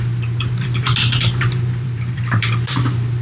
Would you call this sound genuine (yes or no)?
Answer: no